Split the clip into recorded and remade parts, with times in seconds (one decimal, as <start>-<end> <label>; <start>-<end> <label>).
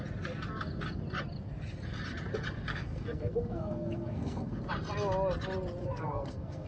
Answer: 0.0-2.7 recorded; 2.7-4.6 remade; 4.6-5.8 recorded; 5.8-6.7 remade